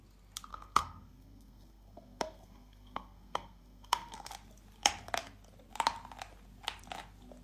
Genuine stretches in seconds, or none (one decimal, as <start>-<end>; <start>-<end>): 0.0-0.5; 4.3-7.4